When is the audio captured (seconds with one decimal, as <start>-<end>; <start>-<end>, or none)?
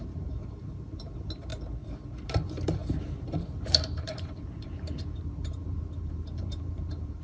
1.5-2.2